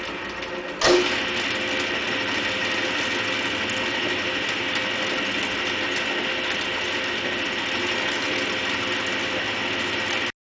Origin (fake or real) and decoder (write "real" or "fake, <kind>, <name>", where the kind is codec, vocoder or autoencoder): real